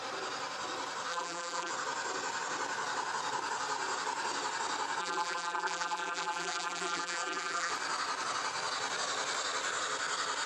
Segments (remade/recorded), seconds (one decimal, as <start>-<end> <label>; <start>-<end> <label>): 0.0-1.1 recorded; 1.1-1.7 remade; 1.7-5.0 recorded; 5.0-7.7 remade; 7.7-10.5 recorded

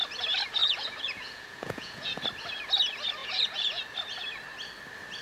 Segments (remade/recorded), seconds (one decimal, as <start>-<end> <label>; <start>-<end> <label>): 0.0-0.6 recorded; 0.6-2.2 remade; 2.2-3.2 recorded; 3.2-3.8 remade; 3.8-5.2 recorded

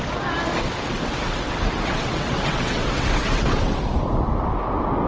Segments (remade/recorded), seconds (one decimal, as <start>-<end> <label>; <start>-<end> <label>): 0.0-0.7 recorded; 0.7-3.8 remade; 3.8-5.1 recorded

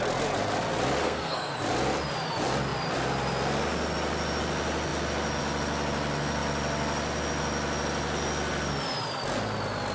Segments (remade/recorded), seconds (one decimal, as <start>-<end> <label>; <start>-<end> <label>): 0.0-1.0 recorded; 1.0-1.5 remade; 1.5-9.9 recorded

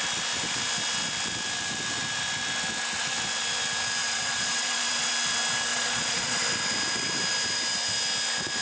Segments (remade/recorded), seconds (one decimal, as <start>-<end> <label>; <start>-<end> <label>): 0.0-4.0 recorded; 4.0-5.1 remade; 5.1-5.7 recorded; 5.7-6.4 remade; 6.4-8.6 recorded